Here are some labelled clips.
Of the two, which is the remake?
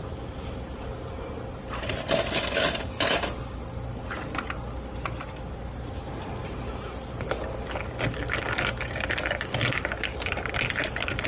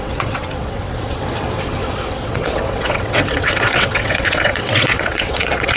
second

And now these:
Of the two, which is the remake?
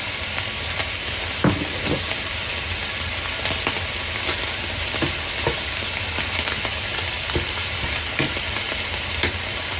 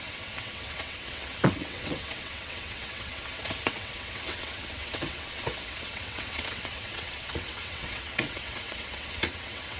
second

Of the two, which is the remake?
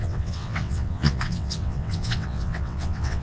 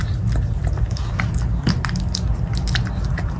first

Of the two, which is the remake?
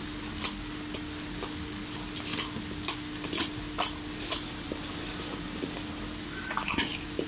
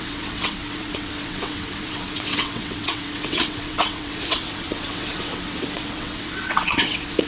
second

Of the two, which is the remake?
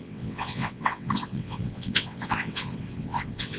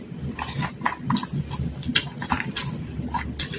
first